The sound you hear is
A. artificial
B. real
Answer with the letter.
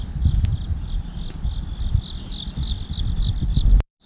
A